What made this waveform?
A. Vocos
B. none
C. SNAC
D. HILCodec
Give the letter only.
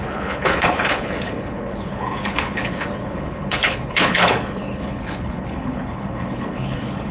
D